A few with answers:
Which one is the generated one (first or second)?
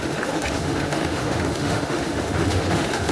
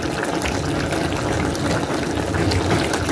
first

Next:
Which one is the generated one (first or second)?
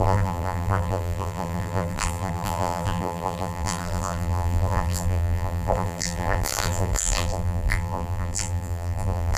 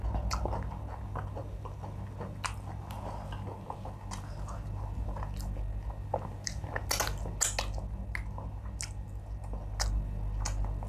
first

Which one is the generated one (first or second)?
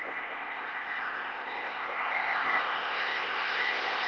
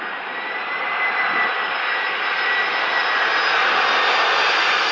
first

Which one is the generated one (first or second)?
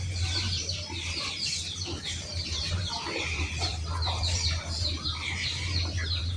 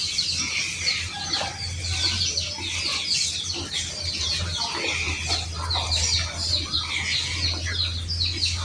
first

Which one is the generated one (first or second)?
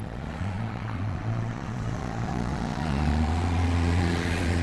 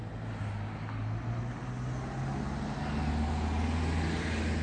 first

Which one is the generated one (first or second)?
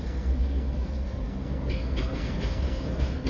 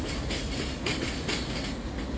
first